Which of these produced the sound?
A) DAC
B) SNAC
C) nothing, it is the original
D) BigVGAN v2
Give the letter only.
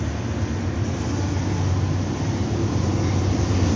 C